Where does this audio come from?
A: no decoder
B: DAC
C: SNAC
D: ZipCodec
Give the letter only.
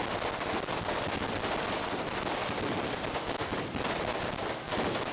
A